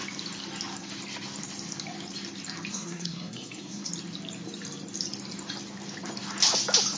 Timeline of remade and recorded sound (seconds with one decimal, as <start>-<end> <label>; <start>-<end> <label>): 0.0-2.7 recorded; 2.7-3.9 remade; 3.9-7.0 recorded